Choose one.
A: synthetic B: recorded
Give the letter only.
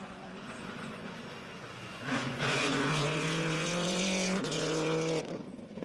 A